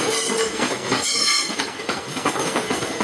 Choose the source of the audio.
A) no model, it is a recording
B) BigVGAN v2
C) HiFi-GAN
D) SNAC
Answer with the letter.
D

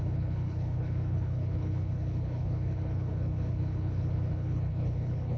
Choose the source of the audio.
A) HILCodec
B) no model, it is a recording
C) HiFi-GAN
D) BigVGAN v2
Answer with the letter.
A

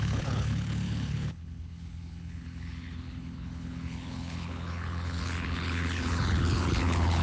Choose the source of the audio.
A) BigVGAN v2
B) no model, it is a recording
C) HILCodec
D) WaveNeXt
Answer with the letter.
C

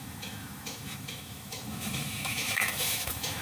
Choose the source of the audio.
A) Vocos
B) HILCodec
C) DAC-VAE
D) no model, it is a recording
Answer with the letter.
C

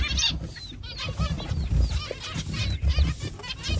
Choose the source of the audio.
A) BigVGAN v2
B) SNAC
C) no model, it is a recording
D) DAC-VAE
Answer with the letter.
C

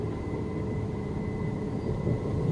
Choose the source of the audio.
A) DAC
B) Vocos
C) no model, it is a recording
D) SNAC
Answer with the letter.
C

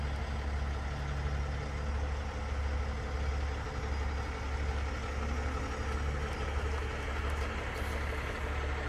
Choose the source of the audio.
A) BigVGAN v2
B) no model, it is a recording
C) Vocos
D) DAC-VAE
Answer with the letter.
B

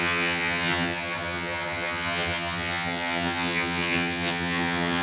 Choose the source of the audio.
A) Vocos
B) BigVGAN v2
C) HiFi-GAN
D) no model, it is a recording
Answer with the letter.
C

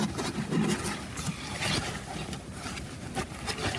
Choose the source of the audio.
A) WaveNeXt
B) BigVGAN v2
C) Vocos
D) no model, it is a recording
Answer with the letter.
D